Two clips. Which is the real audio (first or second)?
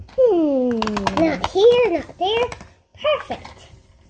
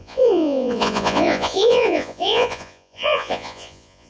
first